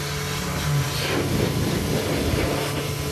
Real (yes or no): yes